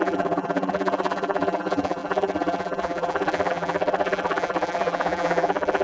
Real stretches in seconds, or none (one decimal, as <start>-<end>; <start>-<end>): none